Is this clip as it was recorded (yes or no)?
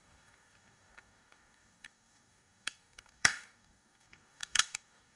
no